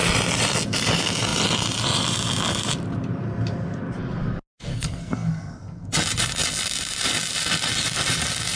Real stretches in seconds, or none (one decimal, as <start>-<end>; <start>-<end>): 0.0-4.7; 5.9-8.6